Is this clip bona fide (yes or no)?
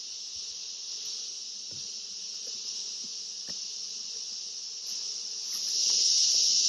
yes